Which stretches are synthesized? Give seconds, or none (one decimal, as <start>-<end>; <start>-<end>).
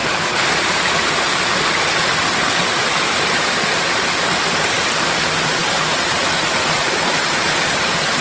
0.0-0.5